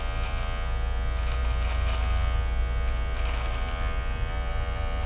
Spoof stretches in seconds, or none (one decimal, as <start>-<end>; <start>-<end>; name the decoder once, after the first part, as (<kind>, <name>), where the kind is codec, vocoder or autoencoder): none